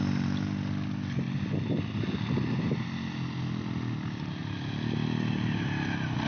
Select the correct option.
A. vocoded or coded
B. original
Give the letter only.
B